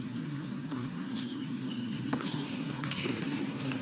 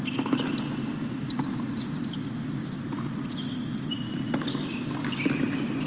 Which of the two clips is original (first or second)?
second